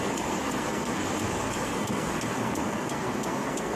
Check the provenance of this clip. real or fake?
fake